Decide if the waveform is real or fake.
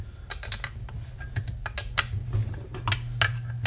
real